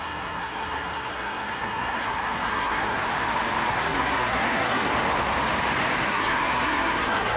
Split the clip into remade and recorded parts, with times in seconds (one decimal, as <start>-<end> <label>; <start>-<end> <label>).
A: 0.0-3.0 remade; 3.0-3.7 recorded; 3.7-4.9 remade; 4.9-6.1 recorded; 6.1-7.4 remade